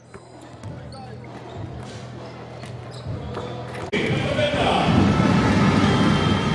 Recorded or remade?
recorded